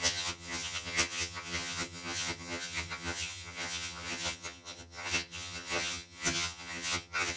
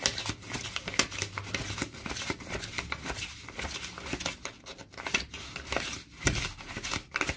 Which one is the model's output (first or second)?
first